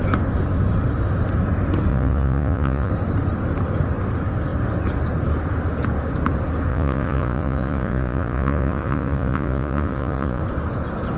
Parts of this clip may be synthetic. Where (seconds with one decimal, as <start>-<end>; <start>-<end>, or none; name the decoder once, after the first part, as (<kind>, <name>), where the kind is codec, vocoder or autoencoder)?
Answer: 1.9-2.9 (vocoder, Vocos); 6.7-10.4